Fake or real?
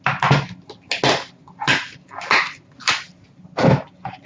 real